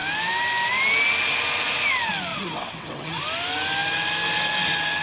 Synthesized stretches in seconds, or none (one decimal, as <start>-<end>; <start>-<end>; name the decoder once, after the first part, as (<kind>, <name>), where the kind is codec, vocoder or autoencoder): 2.3-3.2 (vocoder, WaveNeXt)

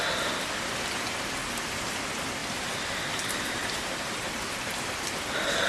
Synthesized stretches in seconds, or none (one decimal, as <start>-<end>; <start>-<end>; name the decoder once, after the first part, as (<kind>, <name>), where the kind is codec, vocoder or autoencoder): 2.4-4.7 (vocoder, BigVGAN v2)

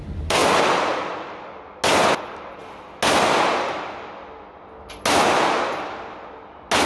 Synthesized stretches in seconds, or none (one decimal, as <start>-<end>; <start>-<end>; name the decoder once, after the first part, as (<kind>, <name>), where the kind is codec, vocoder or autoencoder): none

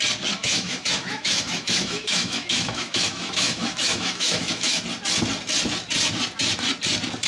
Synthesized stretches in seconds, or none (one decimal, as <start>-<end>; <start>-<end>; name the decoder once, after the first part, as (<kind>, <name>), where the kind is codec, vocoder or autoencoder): 0.4-4.8 (autoencoder, DAC-VAE)

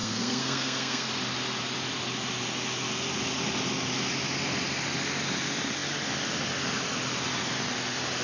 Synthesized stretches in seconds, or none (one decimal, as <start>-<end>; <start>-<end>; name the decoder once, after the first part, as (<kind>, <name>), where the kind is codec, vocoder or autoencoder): 0.0-1.1 (codec, SNAC)

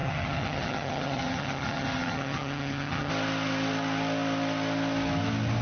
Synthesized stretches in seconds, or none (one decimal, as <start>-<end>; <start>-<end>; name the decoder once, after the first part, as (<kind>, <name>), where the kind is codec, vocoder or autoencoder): 0.0-3.1 (vocoder, HiFi-GAN)

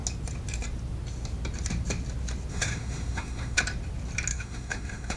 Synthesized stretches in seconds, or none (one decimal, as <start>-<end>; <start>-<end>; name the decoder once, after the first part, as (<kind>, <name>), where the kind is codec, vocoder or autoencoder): 2.5-3.6 (autoencoder, DAC-VAE); 4.3-5.2